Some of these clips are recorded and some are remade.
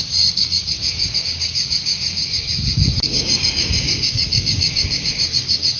remade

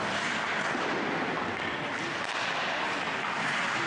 recorded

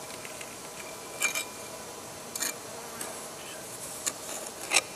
recorded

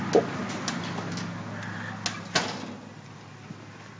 recorded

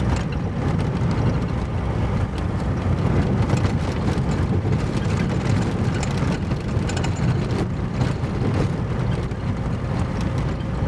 recorded